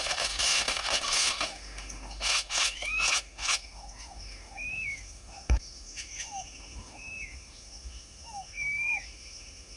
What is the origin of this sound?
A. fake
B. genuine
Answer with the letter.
A